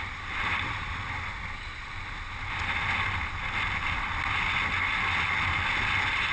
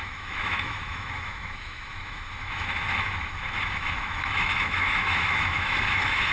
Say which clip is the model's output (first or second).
second